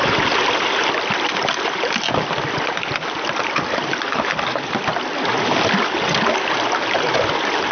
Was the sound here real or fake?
real